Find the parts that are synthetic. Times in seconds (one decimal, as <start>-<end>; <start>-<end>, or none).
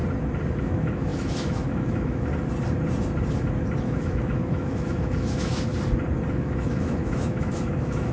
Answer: 0.6-2.3; 3.8-5.7; 6.3-8.1